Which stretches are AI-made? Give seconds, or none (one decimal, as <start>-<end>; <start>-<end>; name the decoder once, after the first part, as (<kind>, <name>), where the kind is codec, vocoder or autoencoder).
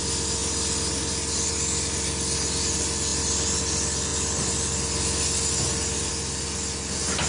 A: none